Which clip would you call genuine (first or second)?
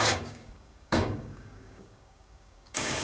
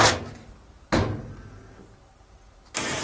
second